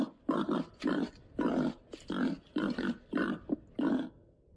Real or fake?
real